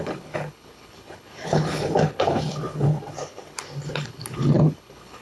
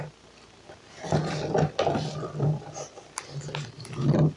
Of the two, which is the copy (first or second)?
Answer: first